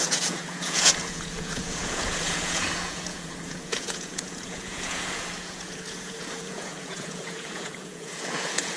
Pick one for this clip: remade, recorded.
remade